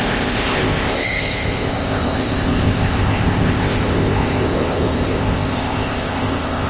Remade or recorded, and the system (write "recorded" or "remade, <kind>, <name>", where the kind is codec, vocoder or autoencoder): remade, codec, ZipCodec